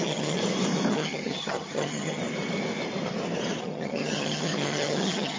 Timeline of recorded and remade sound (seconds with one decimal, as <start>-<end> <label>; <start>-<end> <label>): 0.0-0.4 remade; 0.4-0.9 recorded; 0.9-2.2 remade; 2.2-3.6 recorded; 3.6-5.4 remade